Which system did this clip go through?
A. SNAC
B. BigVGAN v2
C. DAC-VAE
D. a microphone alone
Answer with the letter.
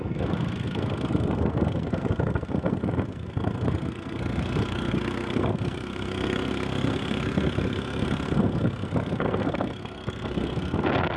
A